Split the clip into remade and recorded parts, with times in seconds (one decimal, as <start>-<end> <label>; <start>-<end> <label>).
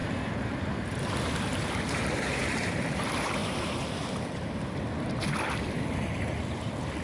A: 0.0-1.1 remade; 1.1-1.5 recorded; 1.5-3.0 remade; 3.0-3.4 recorded; 3.4-4.8 remade; 4.8-7.0 recorded